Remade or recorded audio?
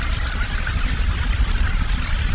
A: recorded